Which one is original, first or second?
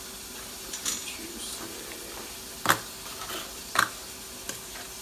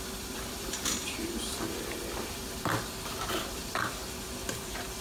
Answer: first